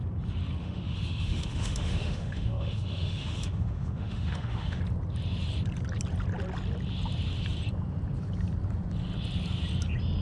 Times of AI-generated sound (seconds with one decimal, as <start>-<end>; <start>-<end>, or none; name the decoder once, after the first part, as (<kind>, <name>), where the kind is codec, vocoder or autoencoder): 0.6-4.8 (autoencoder, DAC-VAE)